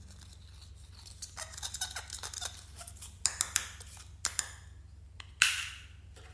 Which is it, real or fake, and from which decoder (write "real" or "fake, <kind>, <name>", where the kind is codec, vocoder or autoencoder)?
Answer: real